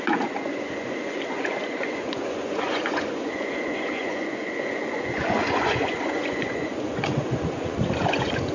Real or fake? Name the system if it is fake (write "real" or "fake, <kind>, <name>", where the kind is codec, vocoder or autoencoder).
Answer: fake, vocoder, Vocos